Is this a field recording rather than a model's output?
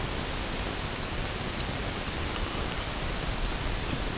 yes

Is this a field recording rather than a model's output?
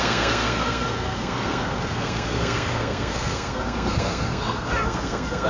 no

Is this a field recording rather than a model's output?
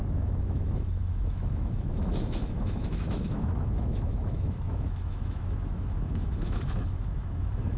no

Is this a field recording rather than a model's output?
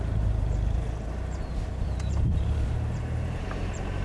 no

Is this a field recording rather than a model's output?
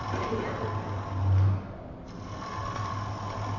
yes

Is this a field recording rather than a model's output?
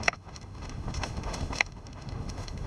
no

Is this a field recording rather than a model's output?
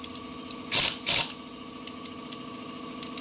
yes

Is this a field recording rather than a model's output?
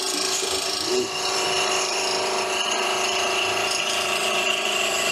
no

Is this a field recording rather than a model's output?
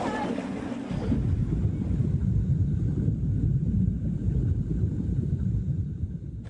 yes